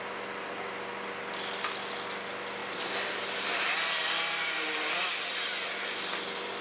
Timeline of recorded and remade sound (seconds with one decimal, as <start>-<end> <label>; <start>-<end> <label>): 0.0-2.6 recorded; 2.6-5.1 remade; 5.1-6.6 recorded